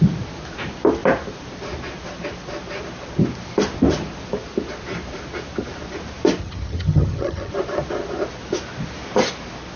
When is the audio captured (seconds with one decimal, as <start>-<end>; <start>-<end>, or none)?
0.0-6.4; 7.5-9.8

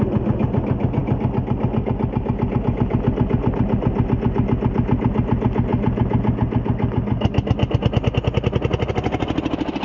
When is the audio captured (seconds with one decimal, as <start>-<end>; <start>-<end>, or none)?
0.0-9.8

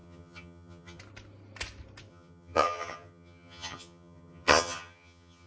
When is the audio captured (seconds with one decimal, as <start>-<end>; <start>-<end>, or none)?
1.0-2.1